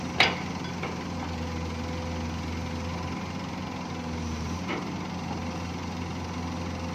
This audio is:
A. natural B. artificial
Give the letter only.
A